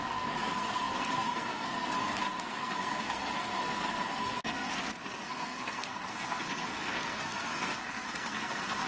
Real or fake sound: fake